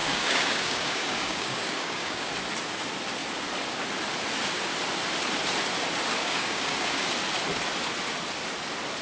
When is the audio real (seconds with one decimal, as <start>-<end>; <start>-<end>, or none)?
2.3-6.2; 7.1-9.0

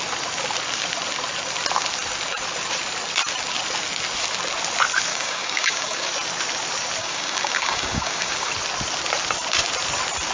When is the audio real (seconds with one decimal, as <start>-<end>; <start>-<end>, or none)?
0.0-5.1; 6.1-7.0; 8.5-10.3